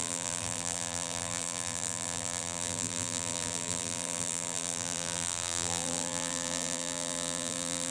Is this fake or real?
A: fake